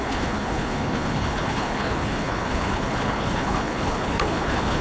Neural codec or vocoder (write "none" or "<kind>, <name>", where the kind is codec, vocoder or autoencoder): codec, HILCodec